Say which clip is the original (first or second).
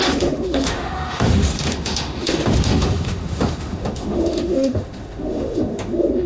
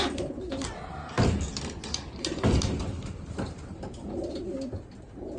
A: second